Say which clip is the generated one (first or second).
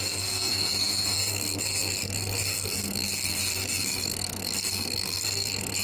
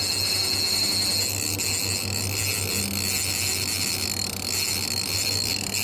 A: first